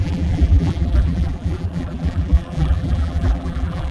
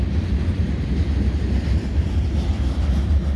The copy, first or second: first